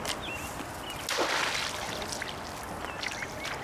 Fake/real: real